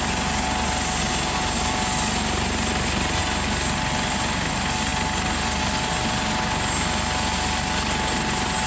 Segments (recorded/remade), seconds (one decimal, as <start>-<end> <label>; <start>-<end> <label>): 0.0-8.7 recorded